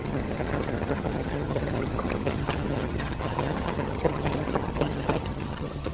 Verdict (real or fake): fake